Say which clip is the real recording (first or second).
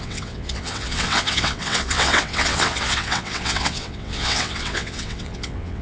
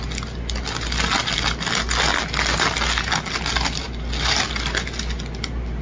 second